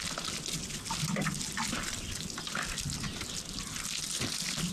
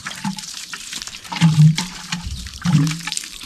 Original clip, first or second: first